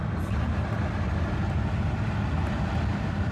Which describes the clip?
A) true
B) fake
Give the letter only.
A